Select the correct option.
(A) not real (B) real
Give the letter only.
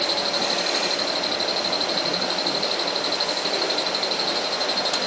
B